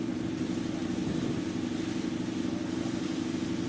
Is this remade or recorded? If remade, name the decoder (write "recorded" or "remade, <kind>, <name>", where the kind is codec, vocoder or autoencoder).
recorded